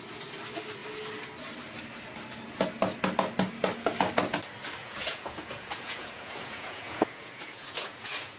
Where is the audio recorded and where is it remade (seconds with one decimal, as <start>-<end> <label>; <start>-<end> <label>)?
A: 0.0-4.8 recorded; 4.8-8.4 remade